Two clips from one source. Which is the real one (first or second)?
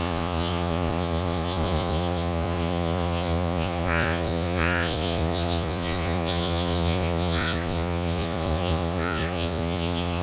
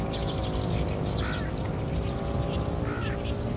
second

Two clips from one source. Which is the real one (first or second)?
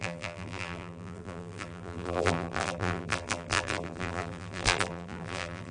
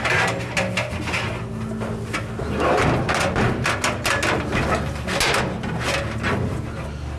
second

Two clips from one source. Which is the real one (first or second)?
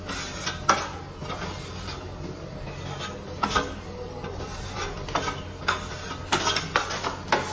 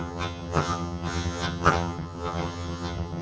first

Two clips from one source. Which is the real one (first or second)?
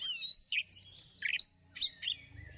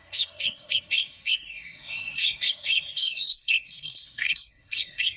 first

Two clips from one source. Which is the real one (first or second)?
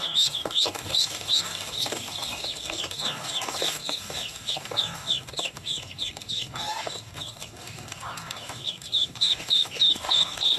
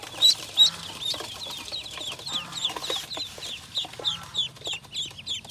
second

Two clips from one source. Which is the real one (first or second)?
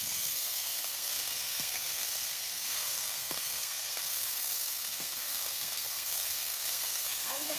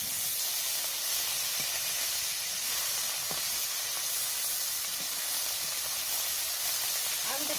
second